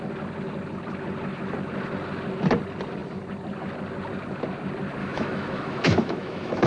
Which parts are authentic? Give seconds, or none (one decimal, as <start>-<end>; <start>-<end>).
0.0-5.0